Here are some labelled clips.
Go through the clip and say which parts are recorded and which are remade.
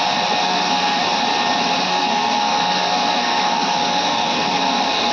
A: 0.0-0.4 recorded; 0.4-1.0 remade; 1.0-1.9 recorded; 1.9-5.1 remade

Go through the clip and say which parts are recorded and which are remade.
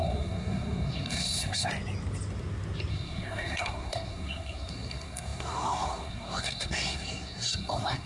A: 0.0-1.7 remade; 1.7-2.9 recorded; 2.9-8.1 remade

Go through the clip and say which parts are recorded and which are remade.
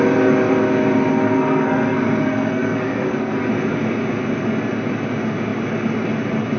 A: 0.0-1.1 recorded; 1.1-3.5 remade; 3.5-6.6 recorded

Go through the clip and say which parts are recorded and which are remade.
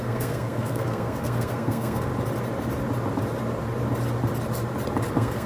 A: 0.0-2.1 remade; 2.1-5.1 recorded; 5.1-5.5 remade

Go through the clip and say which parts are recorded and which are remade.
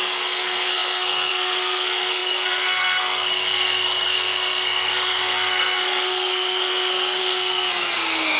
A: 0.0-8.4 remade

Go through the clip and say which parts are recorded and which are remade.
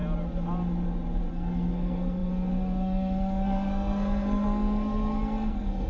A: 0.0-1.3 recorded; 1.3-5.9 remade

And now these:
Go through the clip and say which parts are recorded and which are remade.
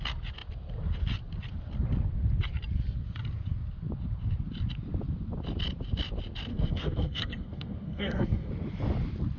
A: 0.0-6.5 recorded; 6.5-8.5 remade; 8.5-9.4 recorded